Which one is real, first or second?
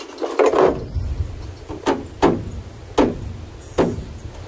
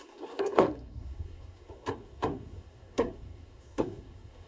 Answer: first